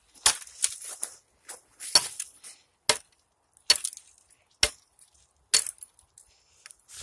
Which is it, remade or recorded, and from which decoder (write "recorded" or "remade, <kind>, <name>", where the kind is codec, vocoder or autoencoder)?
recorded